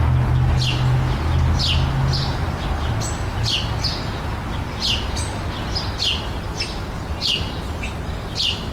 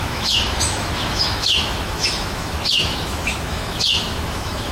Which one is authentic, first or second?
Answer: first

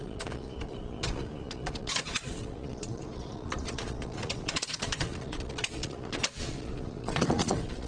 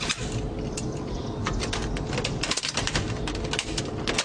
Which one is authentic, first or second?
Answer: second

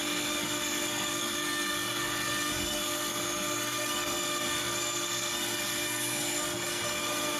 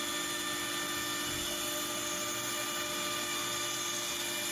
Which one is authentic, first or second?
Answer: second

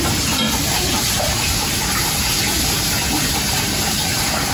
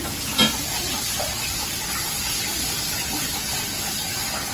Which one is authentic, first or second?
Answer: second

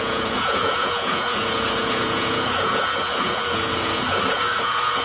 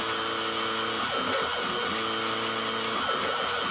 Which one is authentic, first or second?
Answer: second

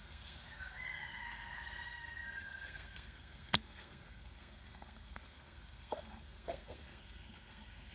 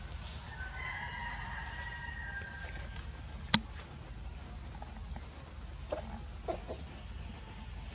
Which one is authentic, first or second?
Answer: second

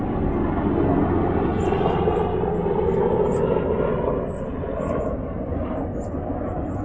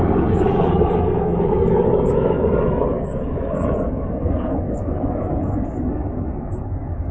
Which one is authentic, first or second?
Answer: first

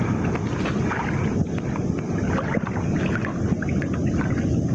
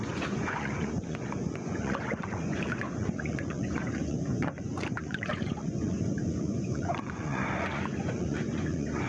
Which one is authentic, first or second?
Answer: first